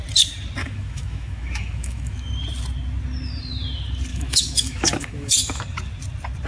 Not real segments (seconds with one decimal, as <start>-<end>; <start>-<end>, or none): 0.6-2.3; 4.1-5.6